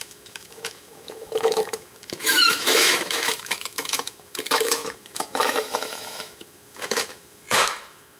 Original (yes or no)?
no